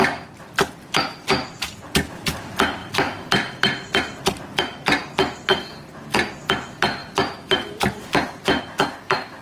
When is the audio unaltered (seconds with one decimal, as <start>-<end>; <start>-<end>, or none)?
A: 0.0-7.0; 7.7-9.4